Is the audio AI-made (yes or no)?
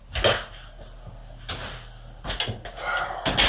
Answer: no